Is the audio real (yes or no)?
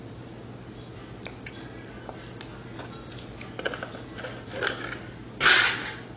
yes